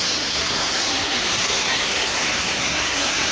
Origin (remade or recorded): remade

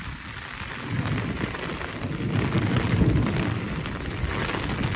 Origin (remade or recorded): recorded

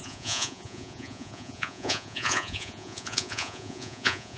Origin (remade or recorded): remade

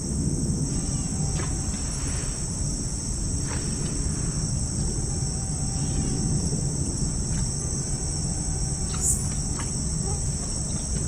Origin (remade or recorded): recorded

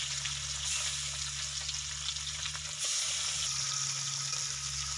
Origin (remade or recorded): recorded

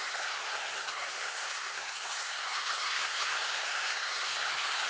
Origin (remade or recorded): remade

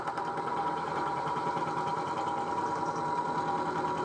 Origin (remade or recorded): recorded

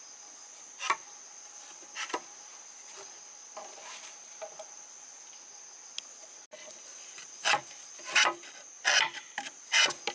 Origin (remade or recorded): recorded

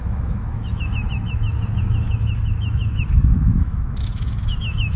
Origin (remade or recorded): remade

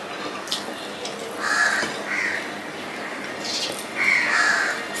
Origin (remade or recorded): recorded